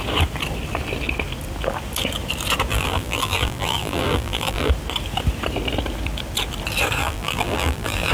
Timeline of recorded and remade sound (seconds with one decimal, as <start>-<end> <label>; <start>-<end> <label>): 0.0-2.7 recorded; 2.7-4.7 remade; 4.7-7.0 recorded; 7.0-8.1 remade